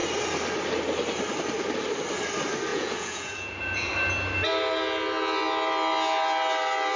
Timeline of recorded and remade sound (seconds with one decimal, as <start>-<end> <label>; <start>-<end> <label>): 0.0-2.7 recorded; 2.7-3.9 remade; 3.9-7.0 recorded